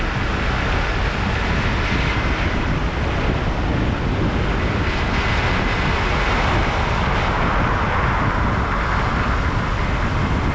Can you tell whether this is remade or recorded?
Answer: recorded